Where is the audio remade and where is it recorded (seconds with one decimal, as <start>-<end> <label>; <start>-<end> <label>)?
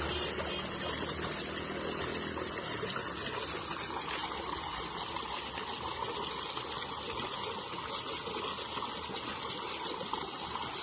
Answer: 0.0-10.8 recorded